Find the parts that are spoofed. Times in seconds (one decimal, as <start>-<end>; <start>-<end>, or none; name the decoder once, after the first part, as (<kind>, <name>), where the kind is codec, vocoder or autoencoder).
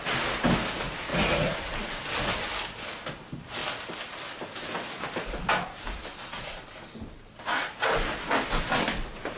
1.1-2.0 (vocoder, Vocos)